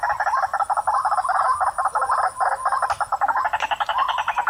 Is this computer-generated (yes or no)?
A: no